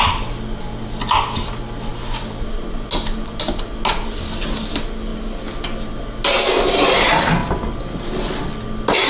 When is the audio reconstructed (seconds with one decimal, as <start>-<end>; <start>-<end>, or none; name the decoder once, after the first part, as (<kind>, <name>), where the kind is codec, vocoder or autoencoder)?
none